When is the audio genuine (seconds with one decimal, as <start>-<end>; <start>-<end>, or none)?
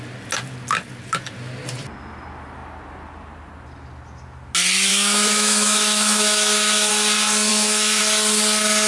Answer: 0.0-4.9; 6.9-7.5; 8.0-8.9